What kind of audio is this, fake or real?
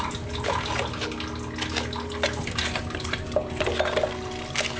real